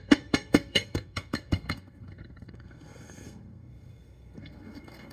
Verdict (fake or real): fake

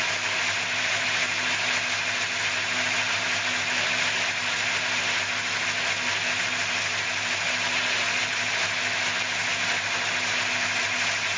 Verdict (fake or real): real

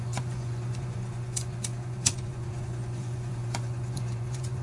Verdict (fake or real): fake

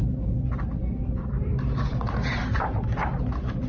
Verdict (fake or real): real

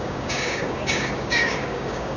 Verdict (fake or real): fake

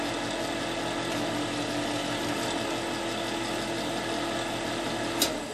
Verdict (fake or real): real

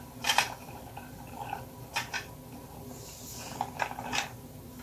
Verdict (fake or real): real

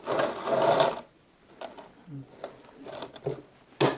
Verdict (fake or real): real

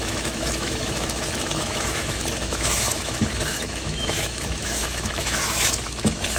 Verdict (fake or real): fake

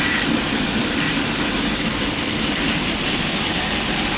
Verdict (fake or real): real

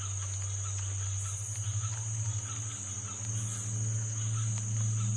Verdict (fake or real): real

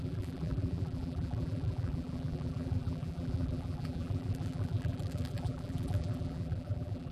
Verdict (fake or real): fake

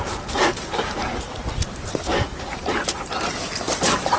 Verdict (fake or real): real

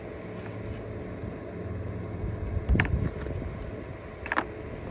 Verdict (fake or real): real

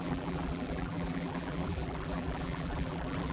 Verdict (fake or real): fake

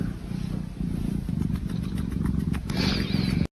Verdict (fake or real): real